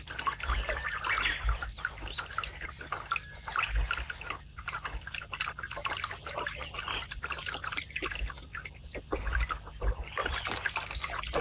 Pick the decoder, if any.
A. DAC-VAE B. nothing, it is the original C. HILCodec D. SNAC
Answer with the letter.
B